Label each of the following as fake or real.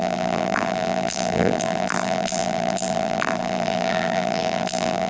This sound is fake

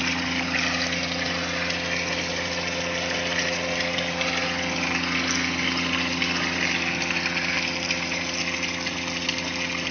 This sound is real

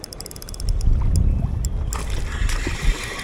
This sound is real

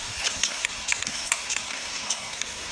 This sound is fake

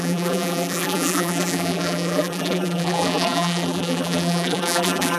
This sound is fake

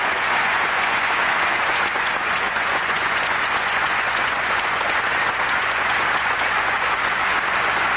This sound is fake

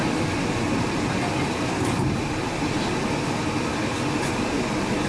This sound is real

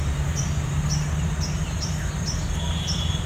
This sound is real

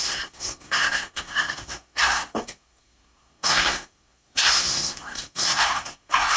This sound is fake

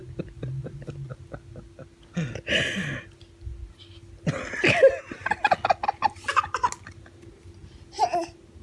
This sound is real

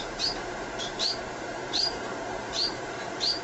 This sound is fake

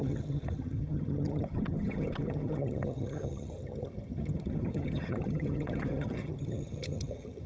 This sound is fake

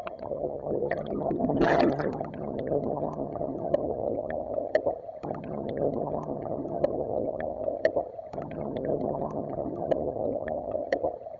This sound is fake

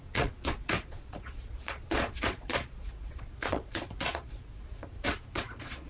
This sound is fake